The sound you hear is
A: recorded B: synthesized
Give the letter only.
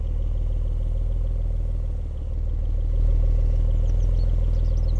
A